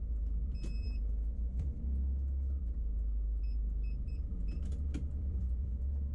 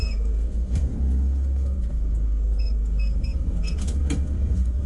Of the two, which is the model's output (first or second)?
second